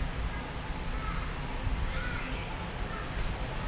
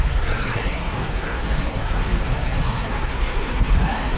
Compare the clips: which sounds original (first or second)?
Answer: first